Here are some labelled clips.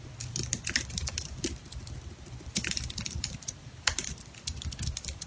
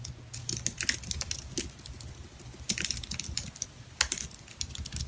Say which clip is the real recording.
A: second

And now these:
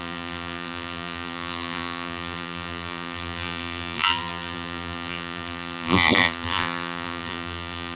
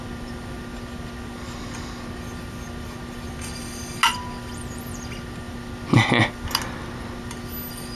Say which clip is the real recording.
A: second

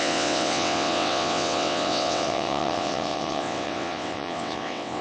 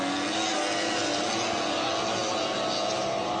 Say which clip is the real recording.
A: second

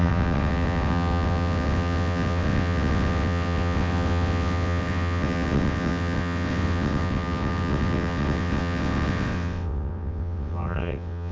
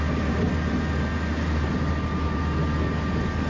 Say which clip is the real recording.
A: second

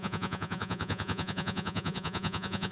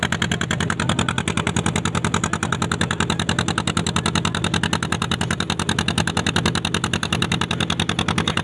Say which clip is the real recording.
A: second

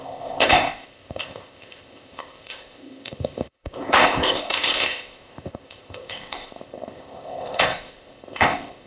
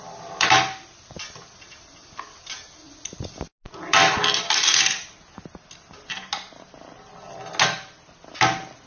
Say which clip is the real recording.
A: second